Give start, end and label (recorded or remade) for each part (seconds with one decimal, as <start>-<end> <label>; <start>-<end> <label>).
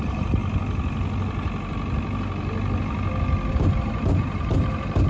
0.0-0.4 remade; 0.4-3.5 recorded; 3.5-5.1 remade